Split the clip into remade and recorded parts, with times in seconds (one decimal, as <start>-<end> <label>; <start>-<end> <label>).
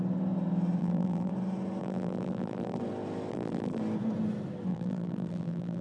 0.0-0.8 recorded; 0.8-1.3 remade; 1.3-1.8 recorded; 1.8-2.8 remade; 2.8-3.3 recorded; 3.3-3.8 remade; 3.8-4.7 recorded; 4.7-5.8 remade